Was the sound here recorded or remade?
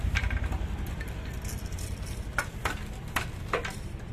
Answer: recorded